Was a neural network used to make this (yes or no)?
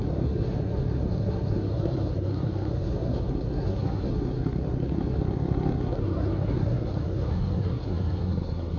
yes